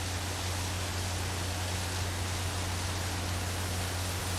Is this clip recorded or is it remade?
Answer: recorded